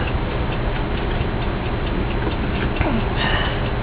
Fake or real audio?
real